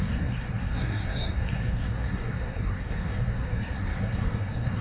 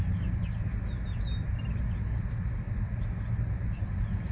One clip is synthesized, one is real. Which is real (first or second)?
second